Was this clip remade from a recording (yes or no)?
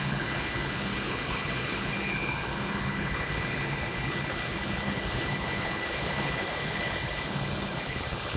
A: yes